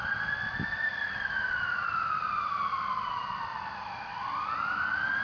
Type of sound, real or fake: fake